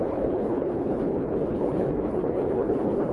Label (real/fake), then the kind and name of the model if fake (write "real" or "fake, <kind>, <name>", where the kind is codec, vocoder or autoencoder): fake, codec, HILCodec